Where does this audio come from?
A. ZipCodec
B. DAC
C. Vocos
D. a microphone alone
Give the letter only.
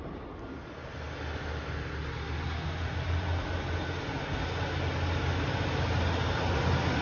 D